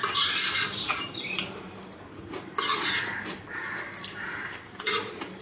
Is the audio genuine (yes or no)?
no